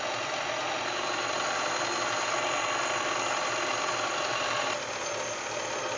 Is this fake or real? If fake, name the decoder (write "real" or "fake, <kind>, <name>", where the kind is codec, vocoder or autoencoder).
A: real